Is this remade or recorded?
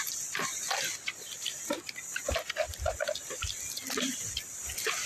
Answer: remade